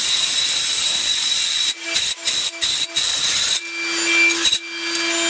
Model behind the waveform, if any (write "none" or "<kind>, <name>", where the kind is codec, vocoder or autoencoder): none